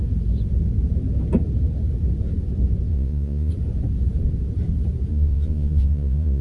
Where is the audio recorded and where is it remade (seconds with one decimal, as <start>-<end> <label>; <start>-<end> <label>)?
0.0-2.9 recorded; 2.9-3.5 remade; 3.5-5.1 recorded; 5.1-6.4 remade